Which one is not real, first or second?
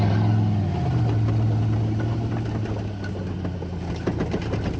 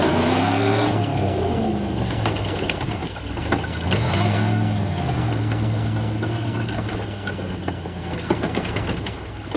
second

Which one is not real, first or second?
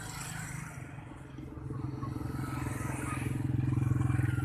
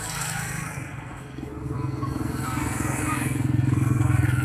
second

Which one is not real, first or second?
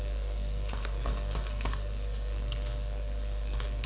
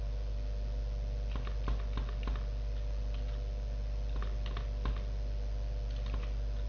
first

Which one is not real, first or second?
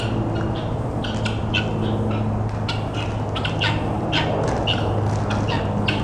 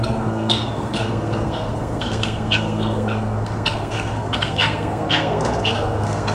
second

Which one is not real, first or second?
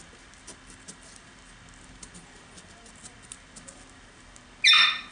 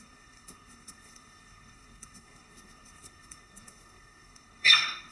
second